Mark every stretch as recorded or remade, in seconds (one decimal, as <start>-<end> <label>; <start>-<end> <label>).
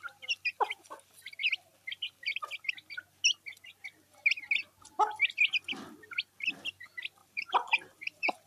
0.0-7.2 recorded; 7.2-8.5 remade